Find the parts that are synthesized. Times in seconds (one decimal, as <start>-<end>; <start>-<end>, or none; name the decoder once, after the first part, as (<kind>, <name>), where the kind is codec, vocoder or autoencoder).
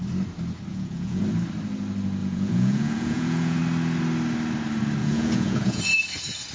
0.7-1.2 (vocoder, Vocos); 2.2-3.6; 5.0-5.8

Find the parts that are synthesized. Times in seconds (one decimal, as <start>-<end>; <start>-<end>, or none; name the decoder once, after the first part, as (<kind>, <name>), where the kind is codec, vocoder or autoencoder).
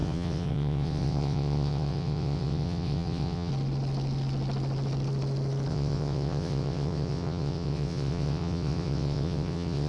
0.0-3.5 (vocoder, WaveNeXt); 5.7-9.9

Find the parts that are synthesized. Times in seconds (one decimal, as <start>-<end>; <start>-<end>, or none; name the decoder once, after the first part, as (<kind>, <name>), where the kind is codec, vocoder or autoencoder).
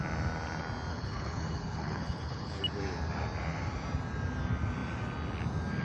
0.9-2.6 (codec, HILCodec)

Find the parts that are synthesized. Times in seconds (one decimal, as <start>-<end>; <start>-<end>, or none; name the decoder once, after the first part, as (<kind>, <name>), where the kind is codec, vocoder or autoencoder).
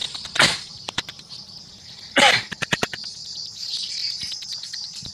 0.0-1.3 (vocoder, BigVGAN v2); 4.0-5.1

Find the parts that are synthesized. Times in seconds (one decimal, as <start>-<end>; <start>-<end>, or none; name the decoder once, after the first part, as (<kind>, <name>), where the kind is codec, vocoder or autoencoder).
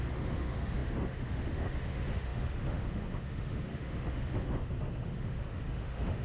0.0-6.2 (autoencoder, DAC-VAE)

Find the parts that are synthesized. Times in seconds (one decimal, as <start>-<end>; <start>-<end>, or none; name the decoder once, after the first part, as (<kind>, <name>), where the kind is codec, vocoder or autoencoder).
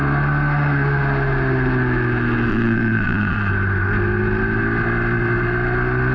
2.5-3.5 (vocoder, Vocos)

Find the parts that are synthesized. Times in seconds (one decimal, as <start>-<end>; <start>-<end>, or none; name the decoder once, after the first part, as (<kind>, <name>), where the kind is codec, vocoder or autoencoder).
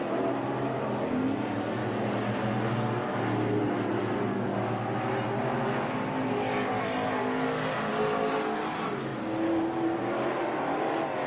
none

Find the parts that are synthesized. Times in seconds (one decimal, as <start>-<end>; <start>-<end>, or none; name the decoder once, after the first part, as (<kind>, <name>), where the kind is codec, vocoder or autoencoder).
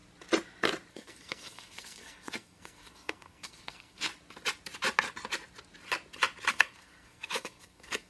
0.9-4.1 (codec, SNAC); 6.5-8.1